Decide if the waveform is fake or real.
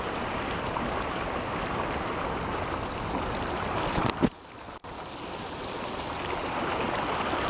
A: real